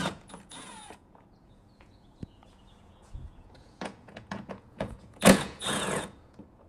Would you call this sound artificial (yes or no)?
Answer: yes